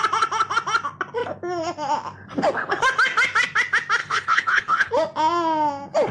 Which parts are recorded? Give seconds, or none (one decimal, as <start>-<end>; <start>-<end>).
0.0-4.0; 4.9-6.1